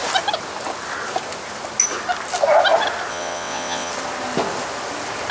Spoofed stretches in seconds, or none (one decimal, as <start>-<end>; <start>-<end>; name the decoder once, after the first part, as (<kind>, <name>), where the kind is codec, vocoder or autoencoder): 3.1-3.9 (vocoder, WaveNeXt)